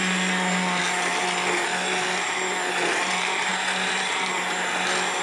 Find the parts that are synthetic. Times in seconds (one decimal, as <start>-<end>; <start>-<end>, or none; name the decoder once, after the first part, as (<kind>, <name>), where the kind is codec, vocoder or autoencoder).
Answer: none